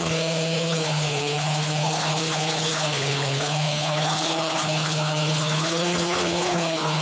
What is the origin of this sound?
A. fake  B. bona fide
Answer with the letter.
A